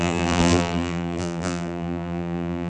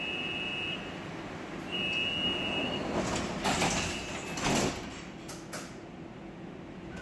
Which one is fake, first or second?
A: first